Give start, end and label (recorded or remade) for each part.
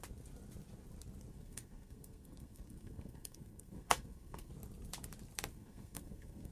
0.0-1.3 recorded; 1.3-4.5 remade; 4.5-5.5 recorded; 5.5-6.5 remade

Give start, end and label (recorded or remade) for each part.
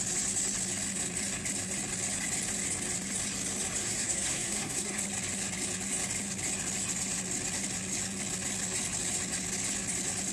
0.0-3.8 recorded; 3.8-5.0 remade; 5.0-10.3 recorded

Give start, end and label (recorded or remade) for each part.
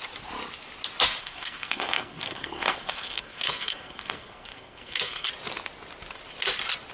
0.0-1.2 recorded; 1.2-5.3 remade; 5.3-6.9 recorded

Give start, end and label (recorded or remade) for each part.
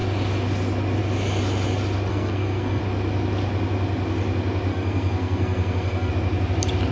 0.0-2.1 recorded; 2.1-2.8 remade; 2.8-4.7 recorded; 4.7-6.1 remade; 6.1-6.9 recorded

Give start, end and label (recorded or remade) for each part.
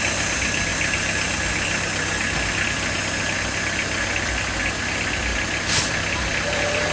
0.0-6.9 recorded